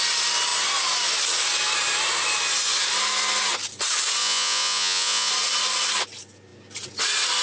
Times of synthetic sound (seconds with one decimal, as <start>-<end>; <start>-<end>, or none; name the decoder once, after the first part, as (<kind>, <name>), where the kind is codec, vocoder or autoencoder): 4.2-5.3 (vocoder, Vocos)